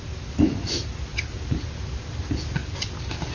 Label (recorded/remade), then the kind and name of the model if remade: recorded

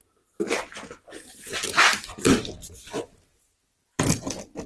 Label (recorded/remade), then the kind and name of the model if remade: recorded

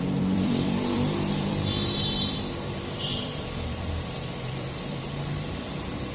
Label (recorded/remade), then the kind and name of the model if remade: remade, vocoder, BigVGAN v2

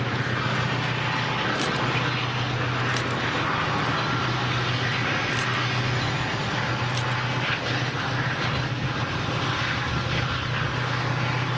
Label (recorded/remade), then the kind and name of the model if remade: recorded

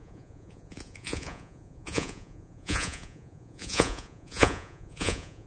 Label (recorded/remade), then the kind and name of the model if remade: remade, vocoder, Vocos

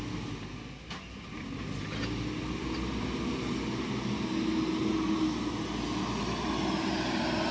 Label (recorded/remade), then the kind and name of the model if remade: recorded